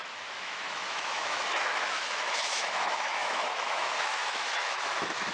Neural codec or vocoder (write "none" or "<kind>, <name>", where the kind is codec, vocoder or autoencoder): autoencoder, DAC-VAE